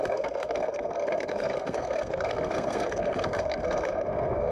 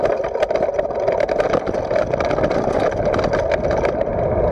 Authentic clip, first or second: second